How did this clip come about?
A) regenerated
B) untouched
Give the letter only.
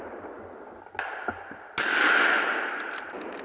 B